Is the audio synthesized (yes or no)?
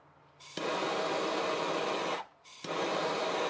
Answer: yes